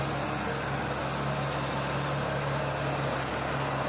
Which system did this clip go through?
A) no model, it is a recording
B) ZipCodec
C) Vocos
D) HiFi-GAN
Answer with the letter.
A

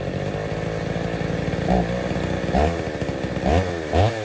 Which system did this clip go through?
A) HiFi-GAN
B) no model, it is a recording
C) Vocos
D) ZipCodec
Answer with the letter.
B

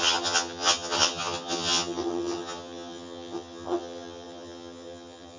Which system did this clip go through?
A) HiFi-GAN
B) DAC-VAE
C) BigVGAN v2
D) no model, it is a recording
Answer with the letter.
A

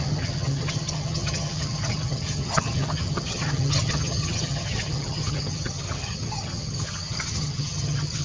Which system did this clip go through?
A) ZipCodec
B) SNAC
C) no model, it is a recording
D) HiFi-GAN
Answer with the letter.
D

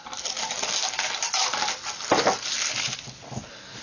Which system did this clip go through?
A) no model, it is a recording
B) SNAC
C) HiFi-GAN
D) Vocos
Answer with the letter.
A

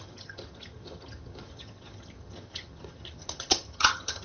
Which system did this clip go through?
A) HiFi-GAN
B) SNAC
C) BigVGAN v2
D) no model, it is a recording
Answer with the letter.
A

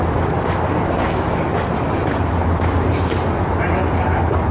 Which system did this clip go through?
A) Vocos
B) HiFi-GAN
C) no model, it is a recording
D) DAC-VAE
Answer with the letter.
C